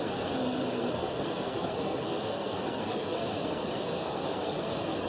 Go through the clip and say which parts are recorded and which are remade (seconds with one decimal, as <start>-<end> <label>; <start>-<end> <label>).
0.0-5.1 remade